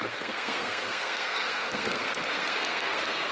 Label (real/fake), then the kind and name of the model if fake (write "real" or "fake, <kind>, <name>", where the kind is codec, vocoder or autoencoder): fake, codec, SNAC